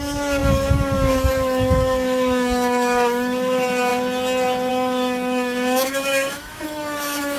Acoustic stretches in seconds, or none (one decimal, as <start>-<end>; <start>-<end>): 3.9-4.7